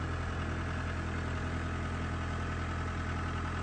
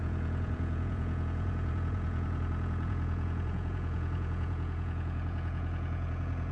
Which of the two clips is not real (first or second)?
second